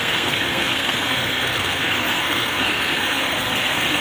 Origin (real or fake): fake